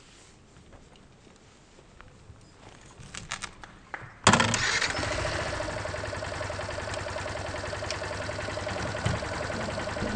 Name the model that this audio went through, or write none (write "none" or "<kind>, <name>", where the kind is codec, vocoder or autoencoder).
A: none